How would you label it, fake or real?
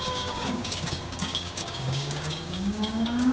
fake